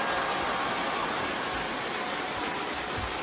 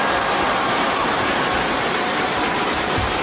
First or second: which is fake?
second